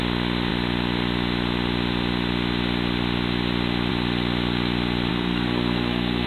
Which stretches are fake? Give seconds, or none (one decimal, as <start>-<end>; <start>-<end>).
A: 5.1-6.3